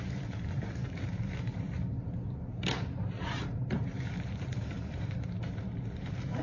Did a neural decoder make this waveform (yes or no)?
yes